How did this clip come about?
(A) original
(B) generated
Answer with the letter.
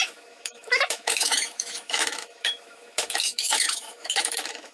B